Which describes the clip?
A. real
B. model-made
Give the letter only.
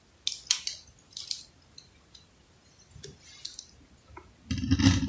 A